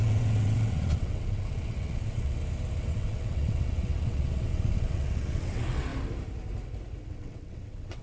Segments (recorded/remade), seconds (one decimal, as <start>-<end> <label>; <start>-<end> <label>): 0.0-2.4 remade; 2.4-2.9 recorded; 2.9-5.9 remade; 5.9-7.1 recorded; 7.1-8.0 remade